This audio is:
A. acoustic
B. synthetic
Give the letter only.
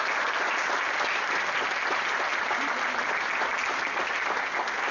A